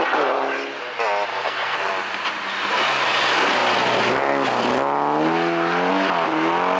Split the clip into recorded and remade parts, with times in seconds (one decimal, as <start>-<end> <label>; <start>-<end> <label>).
0.0-1.3 recorded; 1.3-1.9 remade; 1.9-6.8 recorded